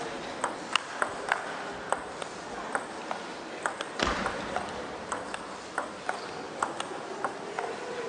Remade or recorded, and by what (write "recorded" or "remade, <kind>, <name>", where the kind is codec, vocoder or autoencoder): recorded